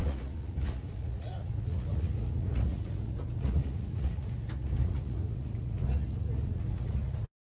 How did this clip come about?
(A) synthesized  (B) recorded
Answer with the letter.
A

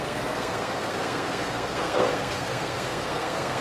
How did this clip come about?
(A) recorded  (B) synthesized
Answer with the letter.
B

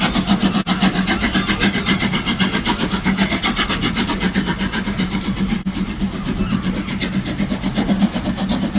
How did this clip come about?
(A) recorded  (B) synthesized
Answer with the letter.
A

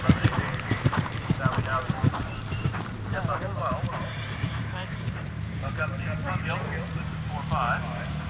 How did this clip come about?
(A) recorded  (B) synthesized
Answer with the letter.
B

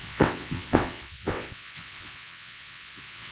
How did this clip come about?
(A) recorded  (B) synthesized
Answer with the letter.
B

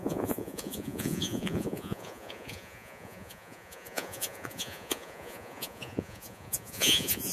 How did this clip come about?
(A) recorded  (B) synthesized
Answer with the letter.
B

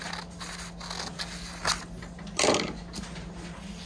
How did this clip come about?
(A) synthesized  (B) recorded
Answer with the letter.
B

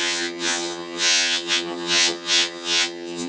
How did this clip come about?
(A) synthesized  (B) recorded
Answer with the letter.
A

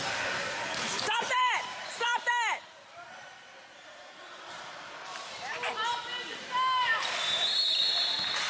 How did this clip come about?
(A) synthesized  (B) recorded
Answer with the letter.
A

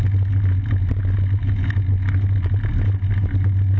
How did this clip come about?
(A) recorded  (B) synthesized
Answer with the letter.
A